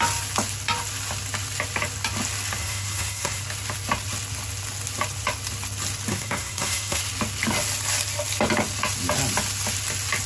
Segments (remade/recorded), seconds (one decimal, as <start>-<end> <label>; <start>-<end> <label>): 0.0-2.6 recorded; 2.6-3.4 remade; 3.4-6.1 recorded; 6.1-7.0 remade; 7.0-10.3 recorded